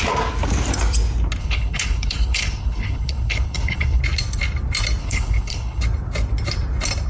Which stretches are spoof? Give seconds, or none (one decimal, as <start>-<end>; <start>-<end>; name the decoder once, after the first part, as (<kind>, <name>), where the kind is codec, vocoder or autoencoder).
1.4-4.0 (codec, HILCodec); 5.0-5.8